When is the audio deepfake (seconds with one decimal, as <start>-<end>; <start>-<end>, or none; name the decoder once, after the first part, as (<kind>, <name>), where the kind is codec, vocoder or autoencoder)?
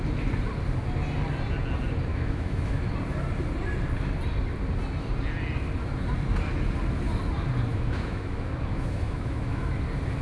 2.1-2.9 (autoencoder, DAC-VAE); 7.7-9.7